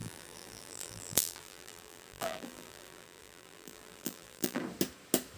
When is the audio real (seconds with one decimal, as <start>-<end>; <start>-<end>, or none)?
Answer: 4.6-5.4